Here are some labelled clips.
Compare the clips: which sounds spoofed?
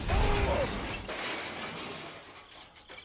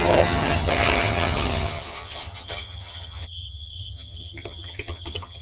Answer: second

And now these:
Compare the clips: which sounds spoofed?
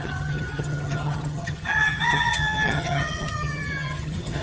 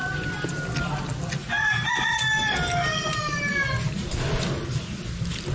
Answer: first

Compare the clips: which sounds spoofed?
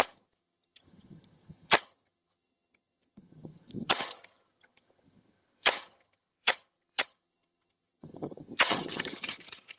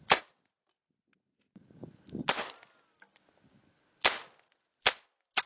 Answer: first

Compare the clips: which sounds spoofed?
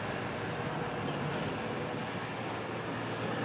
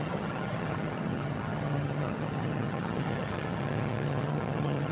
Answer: second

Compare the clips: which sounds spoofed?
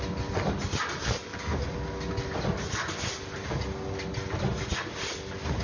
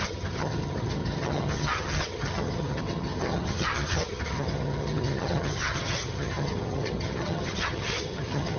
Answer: second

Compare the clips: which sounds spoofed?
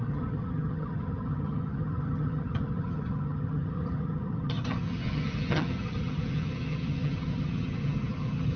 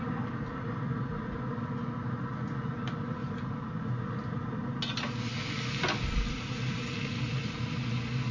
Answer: first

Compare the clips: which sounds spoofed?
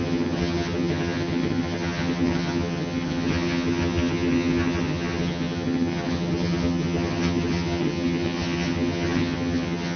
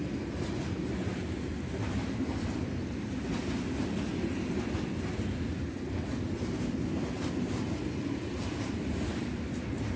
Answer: first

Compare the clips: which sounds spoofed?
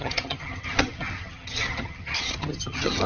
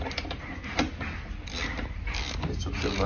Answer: first